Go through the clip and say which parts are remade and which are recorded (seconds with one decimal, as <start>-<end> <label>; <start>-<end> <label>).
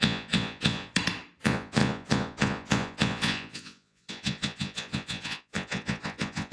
0.0-0.9 remade; 0.9-1.4 recorded; 1.4-6.5 remade